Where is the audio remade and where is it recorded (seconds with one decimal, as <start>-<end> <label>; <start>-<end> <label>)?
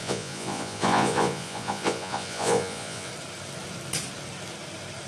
0.0-3.1 remade; 3.1-5.1 recorded